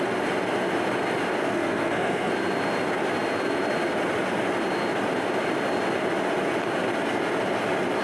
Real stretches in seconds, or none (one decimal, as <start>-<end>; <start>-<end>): 0.0-1.4; 2.3-8.0